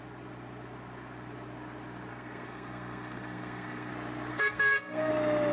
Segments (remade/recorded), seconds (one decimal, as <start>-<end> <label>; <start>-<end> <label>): 0.0-2.1 recorded; 2.1-3.9 remade; 3.9-4.3 recorded; 4.3-5.1 remade; 5.1-5.5 recorded